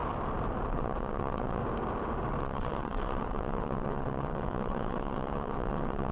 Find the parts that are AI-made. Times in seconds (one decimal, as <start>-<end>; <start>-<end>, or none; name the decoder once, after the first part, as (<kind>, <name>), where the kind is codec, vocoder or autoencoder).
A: 0.7-1.6 (vocoder, WaveNeXt); 2.4-6.1